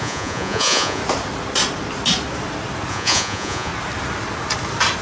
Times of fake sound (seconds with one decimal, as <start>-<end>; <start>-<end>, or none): 0.0-1.0; 2.9-3.7